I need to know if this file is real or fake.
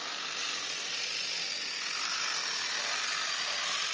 real